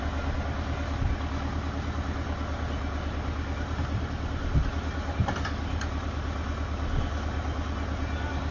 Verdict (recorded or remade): recorded